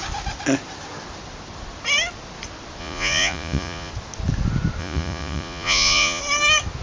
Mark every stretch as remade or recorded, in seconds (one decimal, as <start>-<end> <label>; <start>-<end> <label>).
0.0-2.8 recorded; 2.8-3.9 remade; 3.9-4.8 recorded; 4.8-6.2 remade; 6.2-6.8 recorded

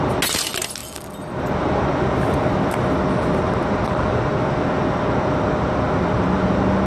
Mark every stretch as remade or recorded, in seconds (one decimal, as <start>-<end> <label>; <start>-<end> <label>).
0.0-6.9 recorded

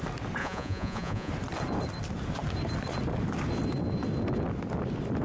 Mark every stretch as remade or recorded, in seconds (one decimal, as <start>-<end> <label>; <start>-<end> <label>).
0.0-0.4 recorded; 0.4-1.3 remade; 1.3-5.2 recorded

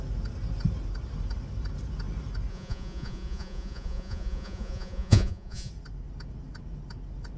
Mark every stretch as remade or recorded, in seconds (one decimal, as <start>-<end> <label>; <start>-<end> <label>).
0.0-2.5 recorded; 2.5-5.7 remade; 5.7-7.4 recorded

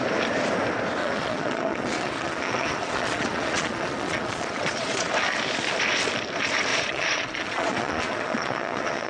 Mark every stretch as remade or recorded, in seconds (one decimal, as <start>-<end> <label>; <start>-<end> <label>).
0.0-1.0 recorded; 1.0-5.1 remade; 5.1-6.7 recorded; 6.7-9.1 remade